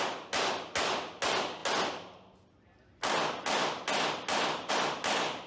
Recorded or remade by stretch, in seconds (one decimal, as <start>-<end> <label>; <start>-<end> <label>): 0.0-5.5 recorded